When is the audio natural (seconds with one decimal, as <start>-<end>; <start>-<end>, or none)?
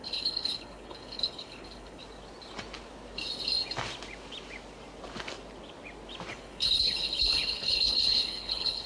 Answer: 2.0-6.3